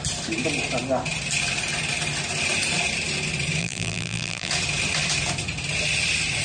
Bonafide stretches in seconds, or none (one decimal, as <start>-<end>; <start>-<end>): 0.0-3.6; 4.5-6.4